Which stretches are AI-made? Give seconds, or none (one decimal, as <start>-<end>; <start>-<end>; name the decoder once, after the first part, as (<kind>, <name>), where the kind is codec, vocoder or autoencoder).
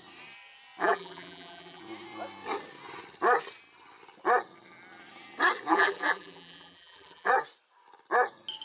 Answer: 0.8-1.8 (vocoder, BigVGAN v2); 5.7-7.3